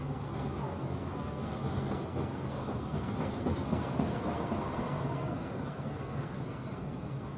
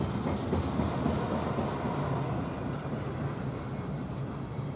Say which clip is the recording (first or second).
second